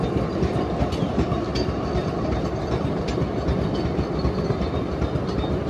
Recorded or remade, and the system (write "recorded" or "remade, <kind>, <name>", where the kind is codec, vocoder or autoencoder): recorded